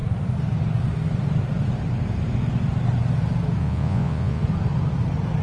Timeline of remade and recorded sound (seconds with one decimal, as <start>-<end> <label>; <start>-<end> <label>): 0.0-3.6 recorded; 3.6-4.4 remade; 4.4-5.4 recorded